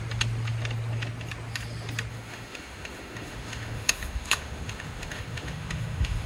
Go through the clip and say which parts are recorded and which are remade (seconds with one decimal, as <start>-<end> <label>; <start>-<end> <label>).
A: 0.0-2.1 recorded; 2.1-6.3 remade